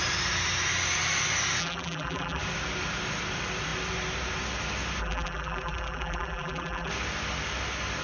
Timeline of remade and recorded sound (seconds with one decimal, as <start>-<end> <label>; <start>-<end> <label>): 0.0-1.6 recorded; 1.6-2.4 remade; 2.4-5.0 recorded; 5.0-6.9 remade; 6.9-8.0 recorded